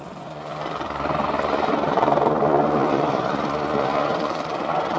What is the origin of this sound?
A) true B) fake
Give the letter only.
B